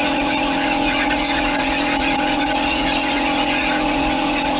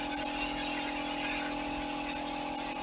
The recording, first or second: second